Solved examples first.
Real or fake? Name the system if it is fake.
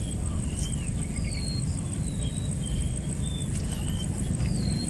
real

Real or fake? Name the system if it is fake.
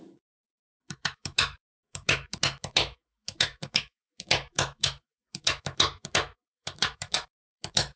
fake, autoencoder, DAC-VAE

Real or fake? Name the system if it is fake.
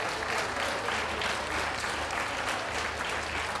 real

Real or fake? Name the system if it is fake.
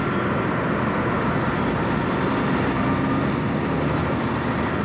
real